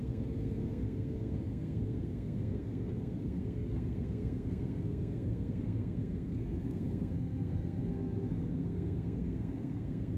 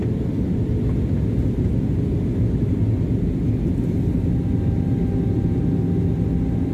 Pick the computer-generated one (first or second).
first